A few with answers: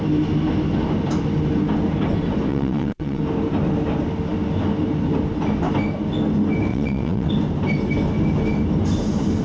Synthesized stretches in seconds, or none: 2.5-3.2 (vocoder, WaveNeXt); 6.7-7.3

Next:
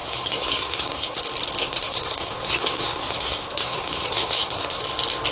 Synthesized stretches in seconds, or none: 0.0-1.2 (codec, SNAC); 1.6-4.8

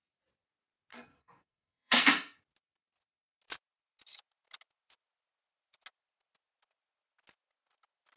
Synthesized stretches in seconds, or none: 0.9-2.4 (codec, SNAC)

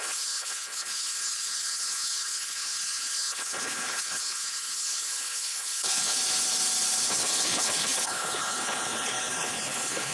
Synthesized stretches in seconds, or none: 0.0-6.2 (codec, HILCodec); 7.1-10.1

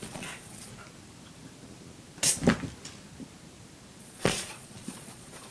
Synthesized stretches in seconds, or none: 0.0-0.7 (vocoder, Vocos); 4.0-5.5

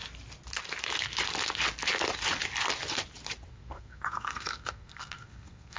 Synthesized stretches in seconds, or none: 3.5-5.8 (codec, SNAC)

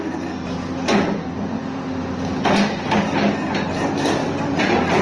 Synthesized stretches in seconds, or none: 4.2-5.0 (vocoder, BigVGAN v2)

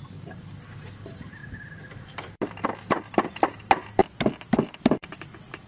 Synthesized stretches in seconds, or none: none